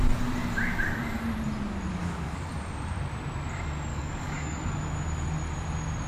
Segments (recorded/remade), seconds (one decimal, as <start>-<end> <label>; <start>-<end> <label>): 0.0-1.9 recorded; 1.9-2.5 remade; 2.5-3.9 recorded; 3.9-4.6 remade; 4.6-6.1 recorded